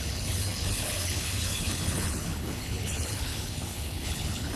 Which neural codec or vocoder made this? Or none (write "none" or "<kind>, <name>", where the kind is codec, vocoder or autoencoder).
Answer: codec, HILCodec